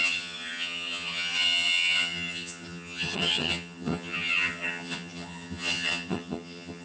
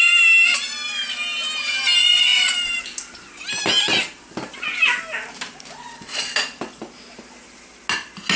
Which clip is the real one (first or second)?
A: second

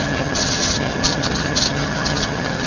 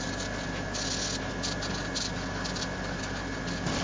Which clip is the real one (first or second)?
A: second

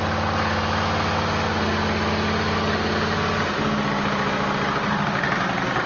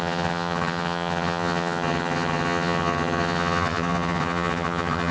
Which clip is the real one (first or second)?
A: first